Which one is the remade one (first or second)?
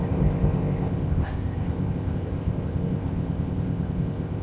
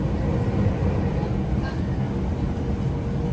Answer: first